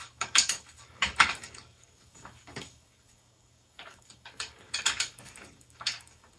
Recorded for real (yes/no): no